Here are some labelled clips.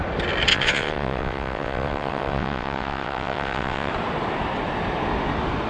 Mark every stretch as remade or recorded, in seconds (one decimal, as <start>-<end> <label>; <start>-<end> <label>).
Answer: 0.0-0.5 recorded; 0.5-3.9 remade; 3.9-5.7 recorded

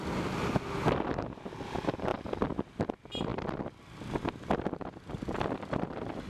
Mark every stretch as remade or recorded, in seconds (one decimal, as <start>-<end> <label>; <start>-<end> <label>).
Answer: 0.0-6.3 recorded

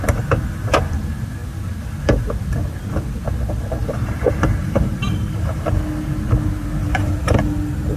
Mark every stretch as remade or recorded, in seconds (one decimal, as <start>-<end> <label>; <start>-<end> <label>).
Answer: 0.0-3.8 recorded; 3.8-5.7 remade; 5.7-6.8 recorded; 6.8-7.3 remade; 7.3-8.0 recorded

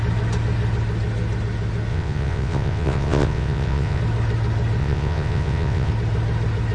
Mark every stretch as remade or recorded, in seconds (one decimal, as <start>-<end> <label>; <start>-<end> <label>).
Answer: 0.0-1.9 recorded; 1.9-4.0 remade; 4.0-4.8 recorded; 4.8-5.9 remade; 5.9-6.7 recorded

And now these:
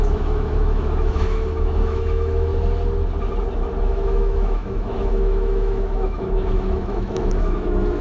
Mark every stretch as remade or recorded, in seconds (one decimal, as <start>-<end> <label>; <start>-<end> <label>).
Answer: 0.0-2.5 remade; 2.5-3.8 recorded; 3.8-8.0 remade